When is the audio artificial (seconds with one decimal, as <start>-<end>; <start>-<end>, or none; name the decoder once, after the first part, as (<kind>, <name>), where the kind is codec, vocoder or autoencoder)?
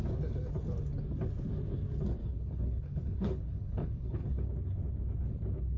2.2-4.5 (codec, HILCodec)